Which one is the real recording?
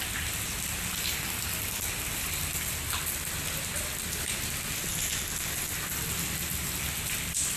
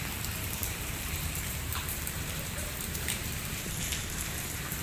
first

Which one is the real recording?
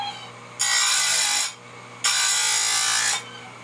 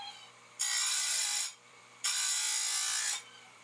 first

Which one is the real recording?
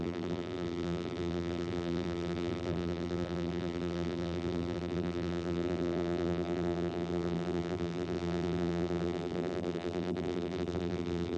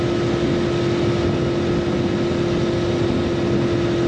second